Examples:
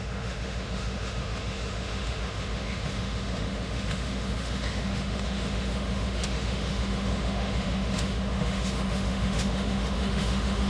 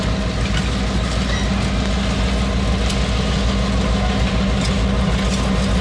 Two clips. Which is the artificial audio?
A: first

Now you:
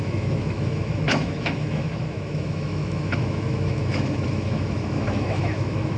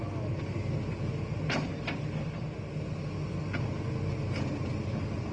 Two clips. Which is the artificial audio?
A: first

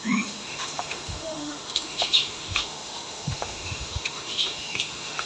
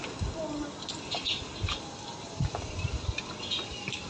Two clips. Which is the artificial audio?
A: first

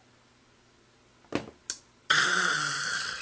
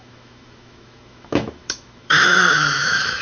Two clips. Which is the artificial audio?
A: second